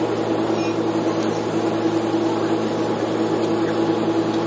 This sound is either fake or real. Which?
real